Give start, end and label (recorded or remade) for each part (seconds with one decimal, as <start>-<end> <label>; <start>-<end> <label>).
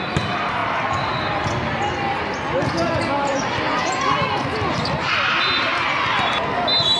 0.0-7.0 recorded